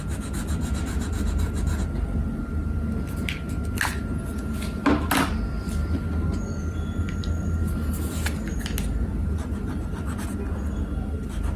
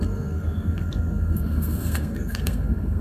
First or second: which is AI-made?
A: second